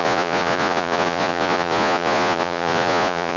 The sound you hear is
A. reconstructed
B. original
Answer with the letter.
A